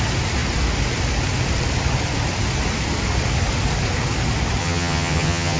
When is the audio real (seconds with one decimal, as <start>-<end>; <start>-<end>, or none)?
0.0-4.6

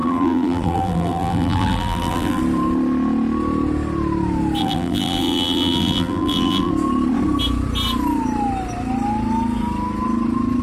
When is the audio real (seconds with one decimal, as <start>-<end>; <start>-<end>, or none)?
2.4-4.6; 6.7-10.6

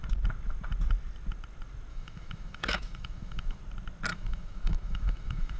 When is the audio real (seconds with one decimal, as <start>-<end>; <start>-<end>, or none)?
0.0-1.9; 3.6-4.1

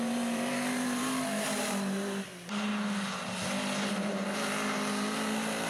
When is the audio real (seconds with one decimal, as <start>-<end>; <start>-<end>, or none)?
2.7-3.9

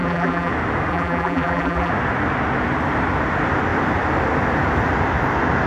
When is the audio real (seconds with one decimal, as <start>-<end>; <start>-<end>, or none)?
0.5-0.9; 1.9-5.7